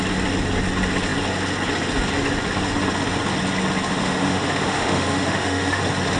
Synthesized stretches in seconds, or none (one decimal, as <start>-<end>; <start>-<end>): 3.9-5.8